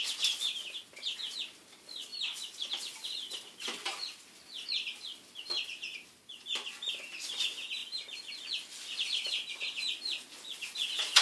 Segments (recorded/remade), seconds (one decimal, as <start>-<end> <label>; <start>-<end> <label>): 0.0-2.1 recorded; 2.1-6.9 remade; 6.9-11.2 recorded